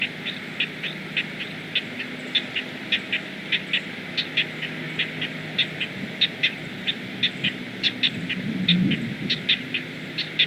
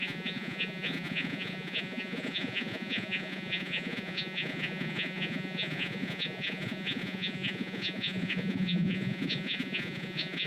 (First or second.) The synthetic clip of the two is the second